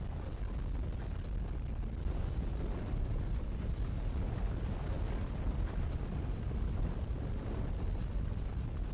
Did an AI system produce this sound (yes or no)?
no